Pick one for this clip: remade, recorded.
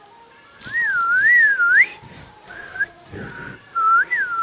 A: recorded